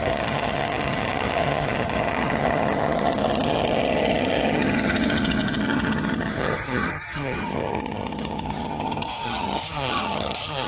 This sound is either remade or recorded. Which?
remade